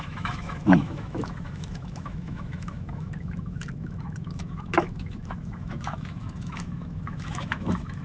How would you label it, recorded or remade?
remade